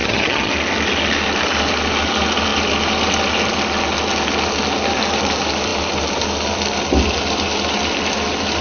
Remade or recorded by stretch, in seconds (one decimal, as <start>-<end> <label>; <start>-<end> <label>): 0.0-0.5 remade; 0.5-8.6 recorded